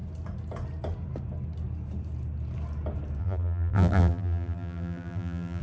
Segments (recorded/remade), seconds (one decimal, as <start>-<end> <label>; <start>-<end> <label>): 0.0-3.2 recorded; 3.2-5.6 remade